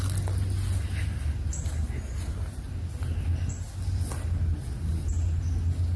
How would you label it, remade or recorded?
recorded